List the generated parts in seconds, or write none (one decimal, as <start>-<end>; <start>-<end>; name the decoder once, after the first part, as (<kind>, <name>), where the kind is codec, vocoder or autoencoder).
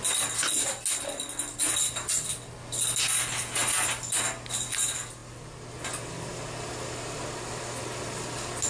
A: none